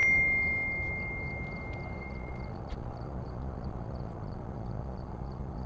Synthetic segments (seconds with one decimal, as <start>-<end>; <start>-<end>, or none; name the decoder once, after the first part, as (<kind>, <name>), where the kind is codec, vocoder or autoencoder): 2.0-5.7 (vocoder, Vocos)

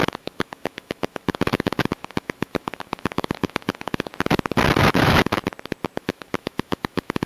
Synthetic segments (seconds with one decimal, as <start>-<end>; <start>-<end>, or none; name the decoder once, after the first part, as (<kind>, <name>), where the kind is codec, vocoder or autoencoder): 0.0-4.1 (autoencoder, DAC-VAE); 4.8-5.4; 6.0-7.3